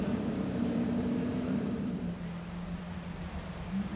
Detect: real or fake fake